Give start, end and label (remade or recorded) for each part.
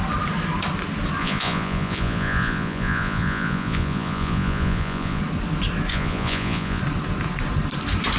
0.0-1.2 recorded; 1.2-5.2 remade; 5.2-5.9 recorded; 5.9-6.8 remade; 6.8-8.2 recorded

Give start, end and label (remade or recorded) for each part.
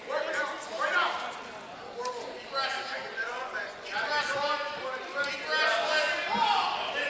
0.0-3.1 recorded; 3.1-4.1 remade; 4.1-7.1 recorded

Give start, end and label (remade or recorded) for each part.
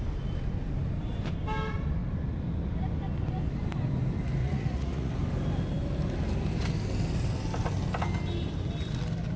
0.0-4.4 recorded; 4.4-5.1 remade; 5.1-9.4 recorded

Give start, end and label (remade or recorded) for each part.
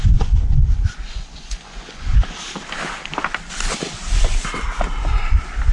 0.0-0.6 remade; 0.6-1.1 recorded; 1.1-2.2 remade; 2.2-5.7 recorded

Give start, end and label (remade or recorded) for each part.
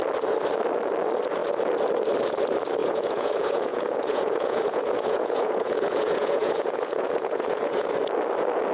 0.0-2.8 recorded; 2.8-7.9 remade; 7.9-8.7 recorded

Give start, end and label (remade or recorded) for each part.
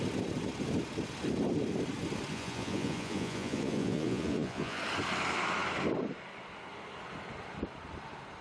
0.0-2.3 recorded; 2.3-4.8 remade; 4.8-8.4 recorded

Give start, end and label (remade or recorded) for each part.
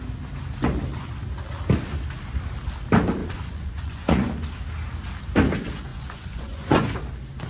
0.0-3.2 recorded; 3.2-4.3 remade; 4.3-5.9 recorded; 5.9-7.0 remade; 7.0-7.5 recorded